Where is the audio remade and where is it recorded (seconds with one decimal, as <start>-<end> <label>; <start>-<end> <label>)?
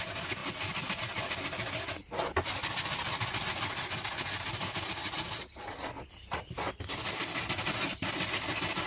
0.0-8.9 recorded